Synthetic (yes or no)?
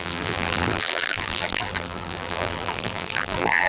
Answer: yes